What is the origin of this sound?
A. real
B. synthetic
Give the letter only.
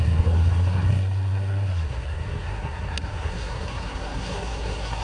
B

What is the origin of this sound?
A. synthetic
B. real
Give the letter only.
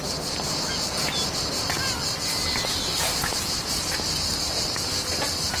B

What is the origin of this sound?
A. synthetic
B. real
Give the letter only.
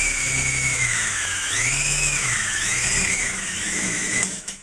A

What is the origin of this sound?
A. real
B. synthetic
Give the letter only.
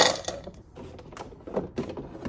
A